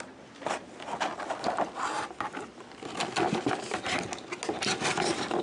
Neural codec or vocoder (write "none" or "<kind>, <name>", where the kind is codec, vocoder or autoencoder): none